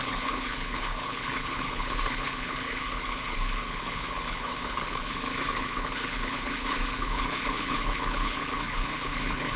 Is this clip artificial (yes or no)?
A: yes